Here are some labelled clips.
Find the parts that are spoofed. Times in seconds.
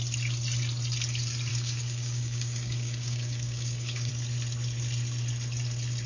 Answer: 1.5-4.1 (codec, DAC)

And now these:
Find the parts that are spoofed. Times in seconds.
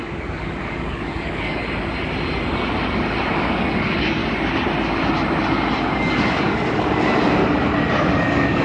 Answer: 0.0-1.6 (codec, DAC); 3.3-4.2; 5.8-7.4; 7.9-8.6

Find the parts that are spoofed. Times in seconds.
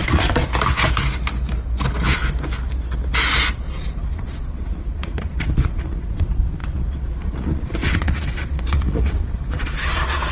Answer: 0.0-0.5 (vocoder, Vocos); 3.5-10.3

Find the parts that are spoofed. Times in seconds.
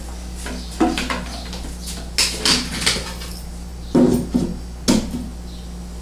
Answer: none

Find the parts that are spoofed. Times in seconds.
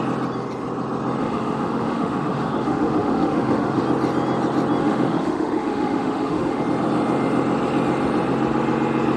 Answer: 1.2-3.8 (autoencoder, DAC-VAE); 4.8-6.6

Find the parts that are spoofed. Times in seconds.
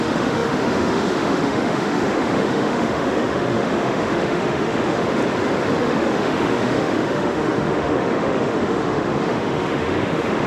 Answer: 0.0-5.2 (autoencoder, DAC-VAE); 5.8-10.5